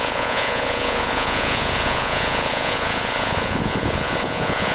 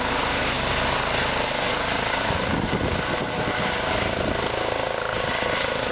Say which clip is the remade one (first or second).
first